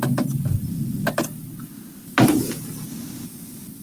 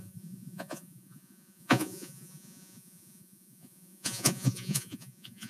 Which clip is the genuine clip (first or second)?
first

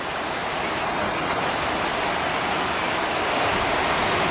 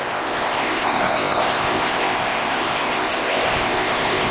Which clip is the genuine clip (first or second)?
first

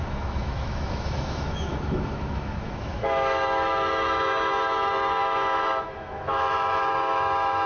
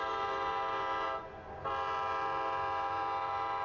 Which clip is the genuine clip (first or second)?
second